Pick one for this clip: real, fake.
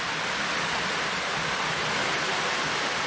real